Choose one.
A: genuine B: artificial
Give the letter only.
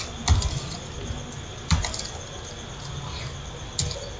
A